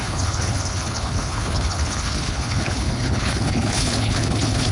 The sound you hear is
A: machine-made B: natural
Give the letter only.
A